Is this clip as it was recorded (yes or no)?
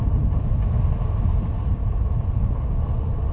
yes